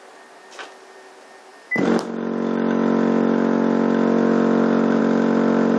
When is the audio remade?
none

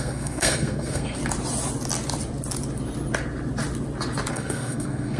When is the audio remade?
0.0-1.2 (codec, SNAC); 4.3-5.2

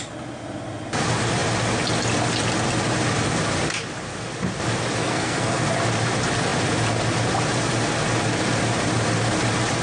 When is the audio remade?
5.0-5.6 (codec, SNAC)

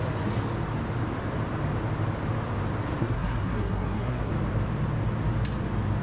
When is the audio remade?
3.0-4.3 (codec, SNAC)

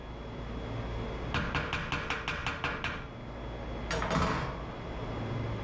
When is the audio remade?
none

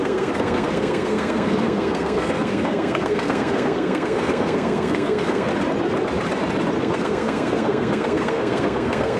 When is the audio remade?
0.0-5.5 (codec, SNAC); 6.8-9.2

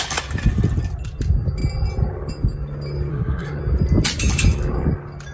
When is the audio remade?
3.1-3.6 (codec, SNAC)